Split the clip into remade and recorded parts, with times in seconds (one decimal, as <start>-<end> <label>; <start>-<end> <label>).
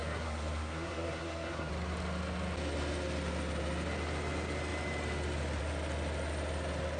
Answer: 0.0-1.7 remade; 1.7-7.0 recorded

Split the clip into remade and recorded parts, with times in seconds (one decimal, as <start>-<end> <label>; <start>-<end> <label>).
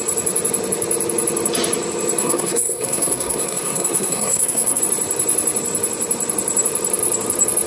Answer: 0.0-2.2 recorded; 2.2-4.8 remade; 4.8-7.7 recorded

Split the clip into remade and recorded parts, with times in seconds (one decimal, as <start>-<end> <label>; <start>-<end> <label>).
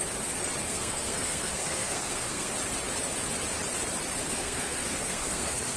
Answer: 0.0-0.6 recorded; 0.6-2.5 remade; 2.5-4.2 recorded; 4.2-5.8 remade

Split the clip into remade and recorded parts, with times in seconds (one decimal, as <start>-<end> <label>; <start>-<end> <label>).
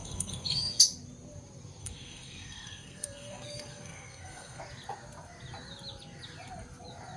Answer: 0.0-0.8 remade; 0.8-1.8 recorded; 1.8-4.6 remade; 4.6-7.2 recorded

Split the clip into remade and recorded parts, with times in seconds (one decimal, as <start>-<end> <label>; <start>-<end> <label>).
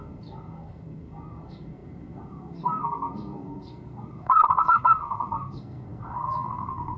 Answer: 0.0-7.0 remade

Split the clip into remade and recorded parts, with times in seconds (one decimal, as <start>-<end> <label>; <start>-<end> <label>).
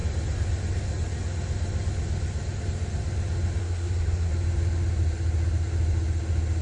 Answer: 0.0-3.6 recorded; 3.6-4.3 remade; 4.3-6.6 recorded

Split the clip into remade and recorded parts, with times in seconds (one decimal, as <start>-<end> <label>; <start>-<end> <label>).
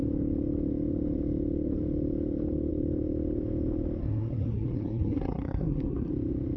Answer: 0.0-4.0 recorded; 4.0-6.1 remade; 6.1-6.6 recorded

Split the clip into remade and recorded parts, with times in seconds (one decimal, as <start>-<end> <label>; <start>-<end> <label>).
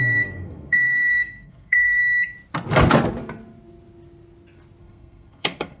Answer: 0.0-2.0 remade; 2.0-4.8 recorded; 4.8-5.8 remade